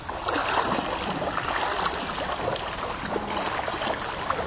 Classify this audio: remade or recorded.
recorded